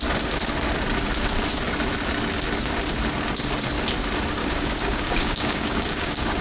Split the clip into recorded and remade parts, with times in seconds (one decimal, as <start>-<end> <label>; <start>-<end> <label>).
0.0-4.4 recorded; 4.4-6.4 remade